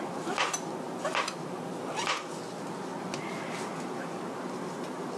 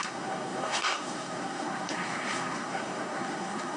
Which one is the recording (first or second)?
first